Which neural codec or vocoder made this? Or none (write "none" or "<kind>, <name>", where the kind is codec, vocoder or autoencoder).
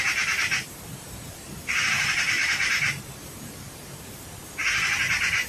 vocoder, BigVGAN v2